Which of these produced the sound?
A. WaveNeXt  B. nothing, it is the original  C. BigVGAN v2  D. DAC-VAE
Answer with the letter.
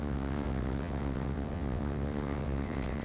A